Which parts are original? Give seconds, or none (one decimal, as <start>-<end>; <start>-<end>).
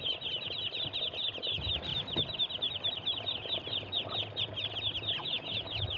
0.0-5.2